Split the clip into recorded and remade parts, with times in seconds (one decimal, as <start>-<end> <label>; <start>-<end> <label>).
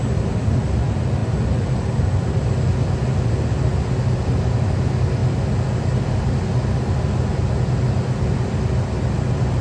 0.0-5.2 recorded; 5.2-6.0 remade; 6.0-9.6 recorded